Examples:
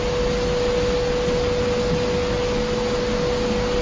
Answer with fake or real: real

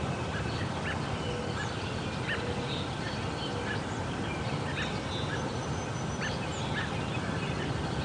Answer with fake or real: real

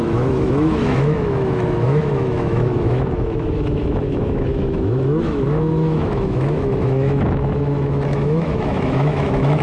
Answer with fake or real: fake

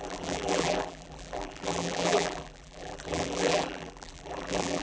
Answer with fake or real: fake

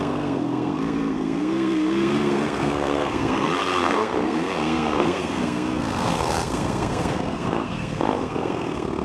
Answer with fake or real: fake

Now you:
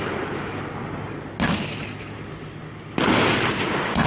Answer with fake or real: real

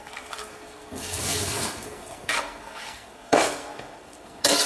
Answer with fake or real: fake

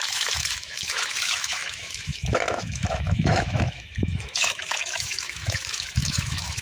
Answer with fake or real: fake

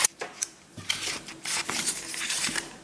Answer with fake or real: fake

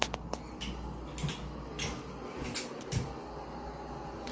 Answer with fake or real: real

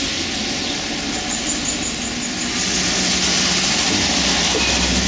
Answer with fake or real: real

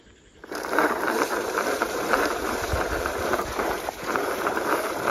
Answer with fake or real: fake